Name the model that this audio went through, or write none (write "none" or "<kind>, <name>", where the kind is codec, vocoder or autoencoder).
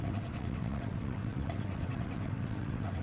vocoder, WaveNeXt